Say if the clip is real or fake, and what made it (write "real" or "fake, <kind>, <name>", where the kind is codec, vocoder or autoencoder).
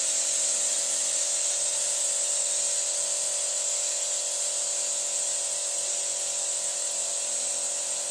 real